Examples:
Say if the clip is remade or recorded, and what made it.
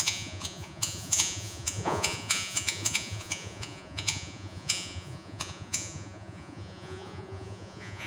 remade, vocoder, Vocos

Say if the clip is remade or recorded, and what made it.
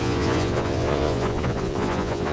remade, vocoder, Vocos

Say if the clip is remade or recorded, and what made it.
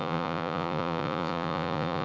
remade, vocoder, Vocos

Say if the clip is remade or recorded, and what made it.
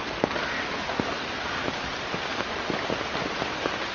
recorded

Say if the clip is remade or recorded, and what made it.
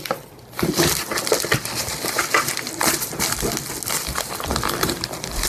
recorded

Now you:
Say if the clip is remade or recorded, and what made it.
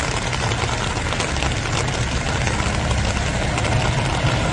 recorded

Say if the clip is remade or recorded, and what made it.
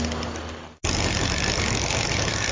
recorded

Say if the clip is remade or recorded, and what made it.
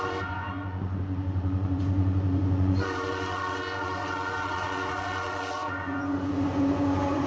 remade, vocoder, Vocos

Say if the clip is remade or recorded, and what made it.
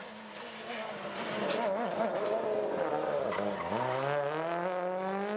recorded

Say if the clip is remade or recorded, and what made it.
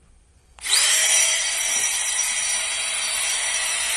remade, vocoder, Vocos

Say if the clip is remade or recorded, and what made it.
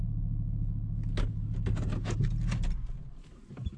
recorded